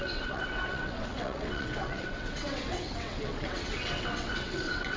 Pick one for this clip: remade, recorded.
remade